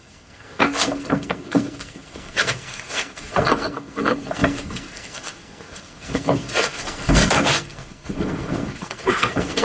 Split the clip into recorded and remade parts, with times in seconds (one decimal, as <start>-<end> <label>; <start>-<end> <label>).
0.0-9.6 remade